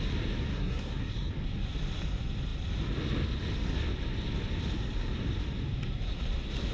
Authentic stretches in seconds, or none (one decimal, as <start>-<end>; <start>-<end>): 0.0-0.5; 1.3-6.7